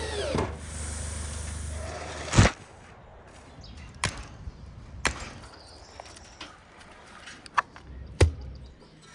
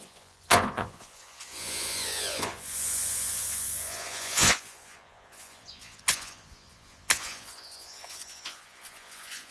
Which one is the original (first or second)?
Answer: first